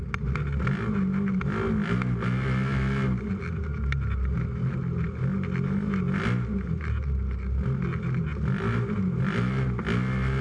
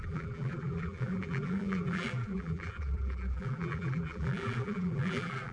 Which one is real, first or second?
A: first